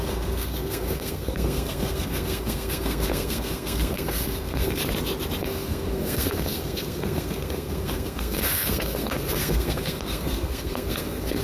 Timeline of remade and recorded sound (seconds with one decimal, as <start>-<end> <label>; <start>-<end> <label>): 0.0-4.8 remade; 4.8-5.4 recorded; 5.4-11.4 remade